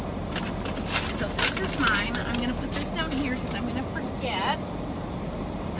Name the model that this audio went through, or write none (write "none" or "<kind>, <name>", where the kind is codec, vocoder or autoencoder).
none